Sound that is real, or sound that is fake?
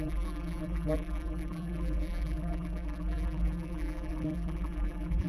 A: fake